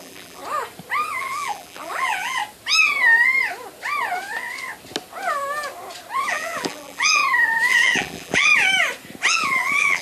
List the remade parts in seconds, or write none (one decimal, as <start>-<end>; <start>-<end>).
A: 0.0-0.4; 1.2-2.4; 6.3-7.2; 7.7-8.5; 9.3-10.0